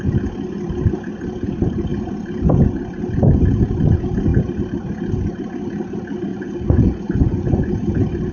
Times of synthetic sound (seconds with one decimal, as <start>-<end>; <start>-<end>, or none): 6.3-7.7